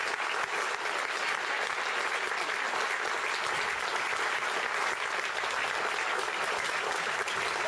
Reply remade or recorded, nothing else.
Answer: recorded